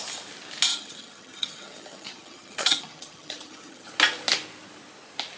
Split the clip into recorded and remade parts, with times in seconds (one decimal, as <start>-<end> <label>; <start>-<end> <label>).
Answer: 0.0-0.7 recorded; 0.7-3.9 remade; 3.9-5.4 recorded